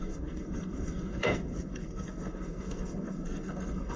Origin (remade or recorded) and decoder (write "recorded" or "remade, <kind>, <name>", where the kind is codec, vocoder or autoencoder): remade, codec, SNAC